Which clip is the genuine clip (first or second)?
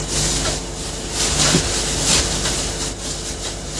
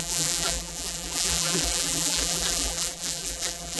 first